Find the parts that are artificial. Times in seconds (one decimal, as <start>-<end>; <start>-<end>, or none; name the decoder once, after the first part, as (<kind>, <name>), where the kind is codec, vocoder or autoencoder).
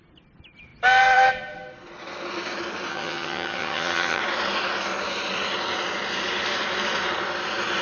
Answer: 2.9-4.2 (vocoder, HiFi-GAN)